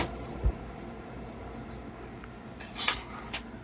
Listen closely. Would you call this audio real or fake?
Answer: real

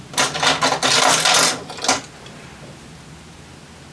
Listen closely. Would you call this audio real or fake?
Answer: real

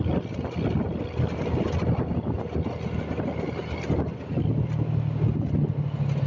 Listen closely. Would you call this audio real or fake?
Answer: real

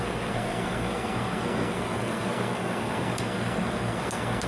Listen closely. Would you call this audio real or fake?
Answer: fake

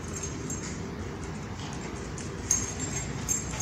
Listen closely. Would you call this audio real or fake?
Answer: real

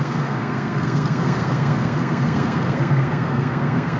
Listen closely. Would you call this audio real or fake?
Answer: fake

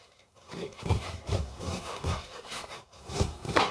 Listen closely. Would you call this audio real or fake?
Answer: fake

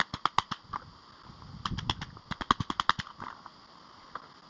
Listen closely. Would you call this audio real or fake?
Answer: real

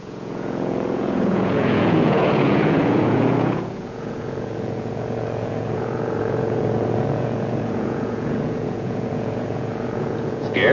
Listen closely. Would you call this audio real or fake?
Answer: fake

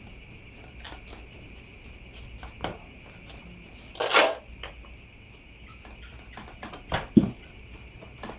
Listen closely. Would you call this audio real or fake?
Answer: real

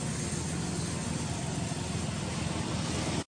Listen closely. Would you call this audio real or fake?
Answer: real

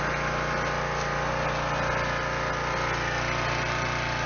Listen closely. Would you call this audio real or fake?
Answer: real